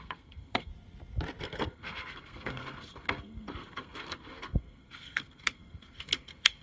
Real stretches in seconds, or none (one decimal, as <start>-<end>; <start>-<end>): 0.7-1.4